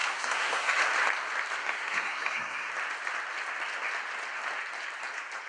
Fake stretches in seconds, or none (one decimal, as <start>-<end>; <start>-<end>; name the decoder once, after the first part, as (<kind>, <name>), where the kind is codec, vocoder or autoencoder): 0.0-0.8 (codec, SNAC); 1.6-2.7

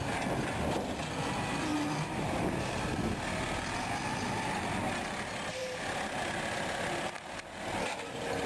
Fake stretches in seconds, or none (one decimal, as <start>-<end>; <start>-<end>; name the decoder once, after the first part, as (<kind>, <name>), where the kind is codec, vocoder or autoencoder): none

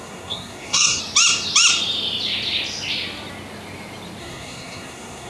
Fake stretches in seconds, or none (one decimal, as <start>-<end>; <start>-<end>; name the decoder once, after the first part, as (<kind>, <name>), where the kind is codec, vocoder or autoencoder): 0.0-1.0 (codec, SNAC); 4.2-5.3

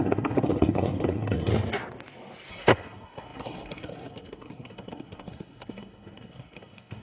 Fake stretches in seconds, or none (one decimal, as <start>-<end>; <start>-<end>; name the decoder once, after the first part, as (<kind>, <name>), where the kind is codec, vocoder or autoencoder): 0.0-1.5 (codec, SNAC); 2.5-7.0

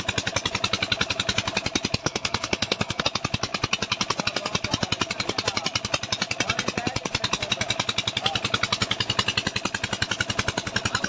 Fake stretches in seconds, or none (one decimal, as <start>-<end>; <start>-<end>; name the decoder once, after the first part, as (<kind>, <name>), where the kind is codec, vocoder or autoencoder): 2.0-3.0 (codec, SNAC)

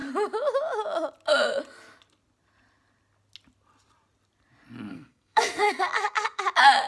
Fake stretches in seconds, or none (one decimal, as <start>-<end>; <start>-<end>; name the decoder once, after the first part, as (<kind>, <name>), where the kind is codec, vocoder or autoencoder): 4.9-6.4 (codec, SNAC)

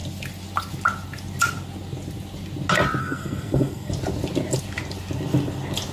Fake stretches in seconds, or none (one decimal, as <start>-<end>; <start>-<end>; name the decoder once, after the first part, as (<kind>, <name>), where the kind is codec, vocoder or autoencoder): 3.0-3.9 (codec, SNAC)